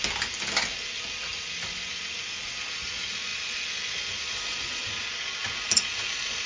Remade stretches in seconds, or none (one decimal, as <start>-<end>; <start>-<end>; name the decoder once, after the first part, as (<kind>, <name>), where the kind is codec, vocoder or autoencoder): 1.3-1.9 (vocoder, BigVGAN v2)